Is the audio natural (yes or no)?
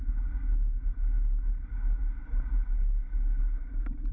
yes